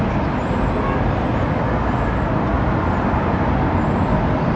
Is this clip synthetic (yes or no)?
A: no